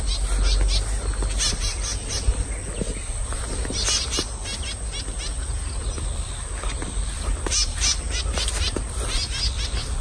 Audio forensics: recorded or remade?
recorded